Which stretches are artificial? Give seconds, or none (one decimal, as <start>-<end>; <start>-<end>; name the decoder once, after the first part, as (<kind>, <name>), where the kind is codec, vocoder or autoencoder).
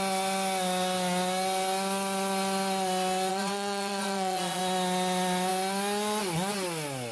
3.3-4.6 (vocoder, Vocos)